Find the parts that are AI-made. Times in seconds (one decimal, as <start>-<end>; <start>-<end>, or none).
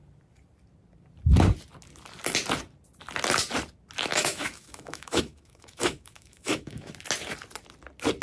4.1-6.9